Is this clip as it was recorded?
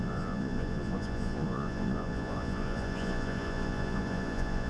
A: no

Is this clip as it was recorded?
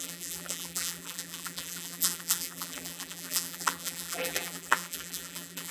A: no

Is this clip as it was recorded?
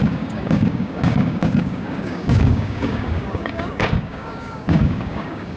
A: no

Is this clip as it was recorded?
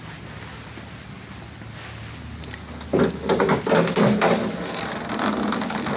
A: yes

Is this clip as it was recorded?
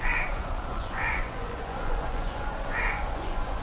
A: no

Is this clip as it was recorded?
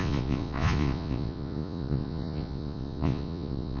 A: no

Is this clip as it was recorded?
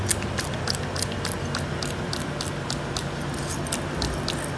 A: yes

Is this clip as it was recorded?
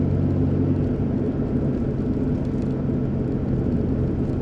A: yes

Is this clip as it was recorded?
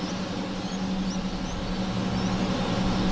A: yes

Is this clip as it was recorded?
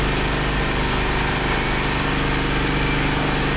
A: yes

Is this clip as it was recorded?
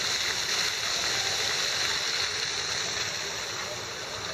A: yes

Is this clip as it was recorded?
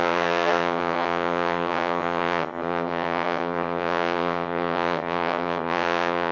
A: no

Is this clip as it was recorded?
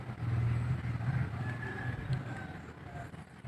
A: yes